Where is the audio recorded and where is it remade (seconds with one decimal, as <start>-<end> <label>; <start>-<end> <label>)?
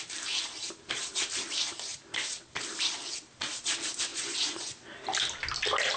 0.0-4.1 recorded; 4.1-4.8 remade; 4.8-6.0 recorded